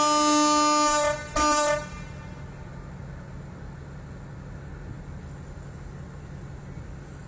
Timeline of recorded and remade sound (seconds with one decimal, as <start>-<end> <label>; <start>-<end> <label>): 0.0-7.3 recorded